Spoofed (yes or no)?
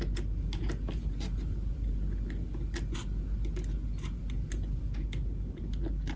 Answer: no